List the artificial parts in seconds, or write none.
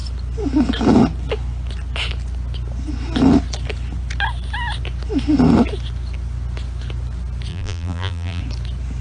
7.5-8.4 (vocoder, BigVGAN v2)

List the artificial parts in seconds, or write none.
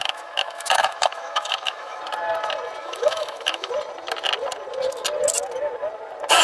0.0-2.0 (autoencoder, DAC-VAE); 2.8-3.7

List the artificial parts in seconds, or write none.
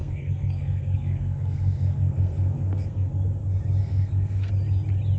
0.0-3.1 (codec, SNAC); 3.8-4.5